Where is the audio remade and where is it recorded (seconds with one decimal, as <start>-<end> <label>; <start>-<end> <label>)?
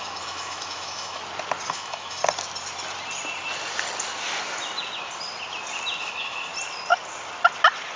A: 0.0-1.2 remade; 1.2-1.7 recorded; 1.7-2.2 remade; 2.2-6.0 recorded; 6.0-6.5 remade; 6.5-8.0 recorded